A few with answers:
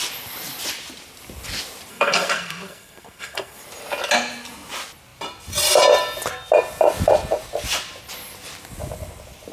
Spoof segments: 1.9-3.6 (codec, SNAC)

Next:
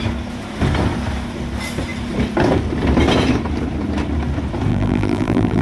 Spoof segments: 4.7-5.6 (vocoder, BigVGAN v2)

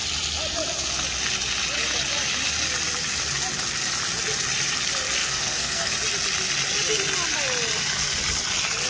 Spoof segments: 5.2-5.9 (codec, SNAC)

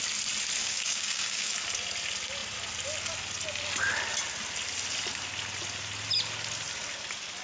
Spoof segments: 0.6-1.5 (codec, DAC)

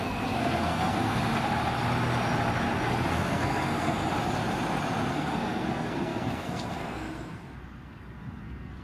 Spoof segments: 0.0-1.2 (codec, SNAC); 3.1-4.0; 5.1-8.8